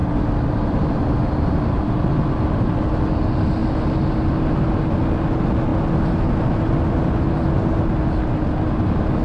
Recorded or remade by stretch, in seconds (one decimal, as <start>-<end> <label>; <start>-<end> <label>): 0.0-9.2 recorded